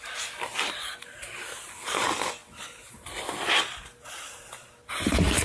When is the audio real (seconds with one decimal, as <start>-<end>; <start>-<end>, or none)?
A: 0.0-5.4